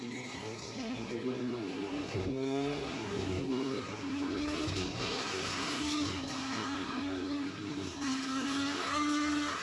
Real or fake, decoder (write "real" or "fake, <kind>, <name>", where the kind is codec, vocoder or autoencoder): fake, codec, SNAC